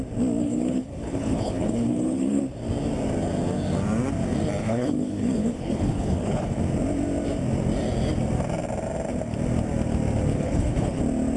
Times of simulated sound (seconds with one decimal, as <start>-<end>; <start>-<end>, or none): 0.4-2.4; 4.6-6.6; 10.3-11.0